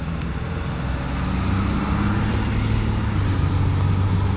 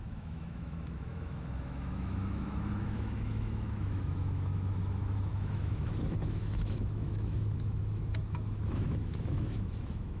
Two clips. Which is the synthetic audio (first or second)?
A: second